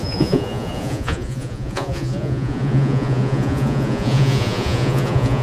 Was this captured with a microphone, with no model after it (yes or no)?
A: no